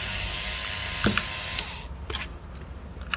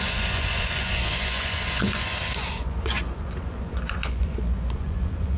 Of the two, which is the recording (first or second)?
first